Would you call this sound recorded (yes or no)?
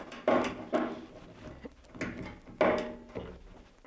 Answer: yes